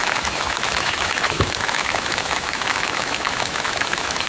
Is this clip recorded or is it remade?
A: remade